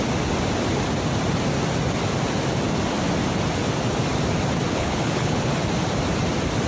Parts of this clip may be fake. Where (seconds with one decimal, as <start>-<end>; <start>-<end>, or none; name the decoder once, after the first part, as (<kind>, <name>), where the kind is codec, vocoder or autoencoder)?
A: 4.7-5.4 (codec, HILCodec)